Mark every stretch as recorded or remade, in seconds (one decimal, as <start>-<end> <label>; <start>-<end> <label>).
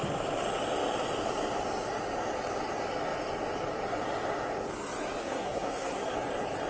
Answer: 0.0-5.2 recorded; 5.2-6.1 remade; 6.1-6.7 recorded